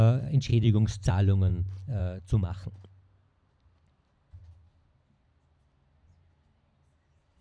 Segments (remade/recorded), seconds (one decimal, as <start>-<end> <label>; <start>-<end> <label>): 0.0-0.5 recorded; 0.5-1.1 remade; 1.1-7.4 recorded